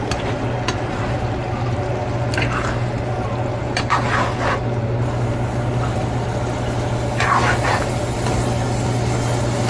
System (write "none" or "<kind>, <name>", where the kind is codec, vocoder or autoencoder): none